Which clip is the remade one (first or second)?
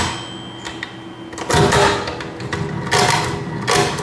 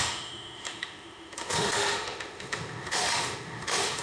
second